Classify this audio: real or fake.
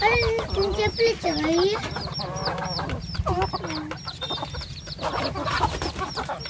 real